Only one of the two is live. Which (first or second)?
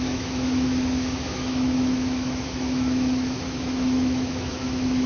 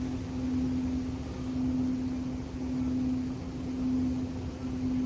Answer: second